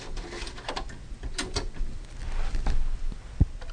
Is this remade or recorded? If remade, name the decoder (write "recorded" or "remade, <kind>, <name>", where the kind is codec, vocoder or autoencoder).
recorded